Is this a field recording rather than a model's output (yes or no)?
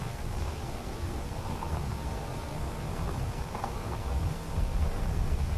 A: no